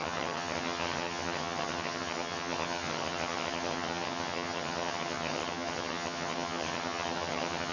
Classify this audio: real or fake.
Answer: fake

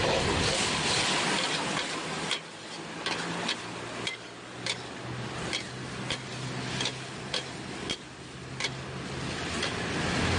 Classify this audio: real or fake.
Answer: real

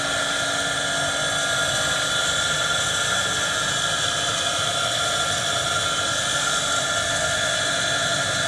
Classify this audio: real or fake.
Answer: real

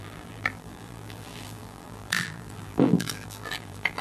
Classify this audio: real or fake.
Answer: fake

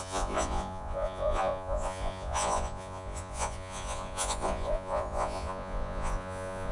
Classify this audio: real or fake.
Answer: fake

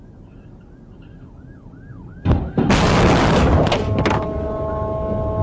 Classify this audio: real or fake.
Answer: real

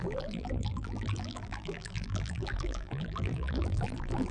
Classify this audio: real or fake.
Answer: fake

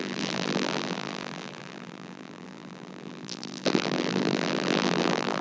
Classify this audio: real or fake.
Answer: fake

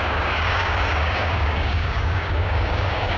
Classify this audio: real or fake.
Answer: fake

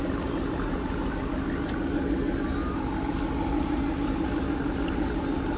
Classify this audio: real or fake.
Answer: real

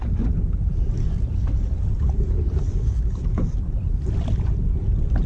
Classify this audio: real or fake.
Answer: real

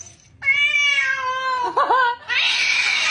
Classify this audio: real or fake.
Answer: real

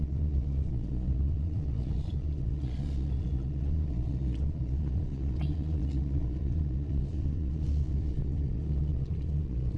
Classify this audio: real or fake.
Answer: fake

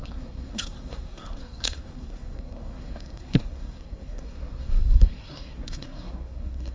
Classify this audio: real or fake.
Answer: fake